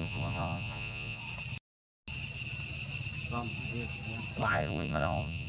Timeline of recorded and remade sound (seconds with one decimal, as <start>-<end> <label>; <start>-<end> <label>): 0.0-1.2 remade; 1.2-4.5 recorded; 4.5-5.5 remade